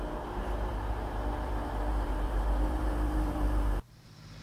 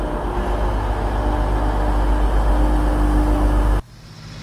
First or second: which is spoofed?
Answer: first